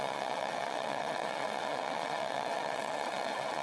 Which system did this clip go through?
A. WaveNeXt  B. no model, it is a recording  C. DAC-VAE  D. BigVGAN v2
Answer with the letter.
A